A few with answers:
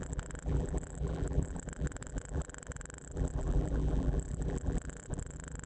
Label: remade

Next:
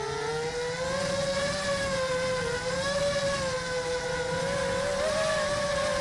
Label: recorded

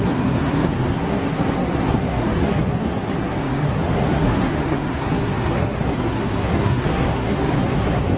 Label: remade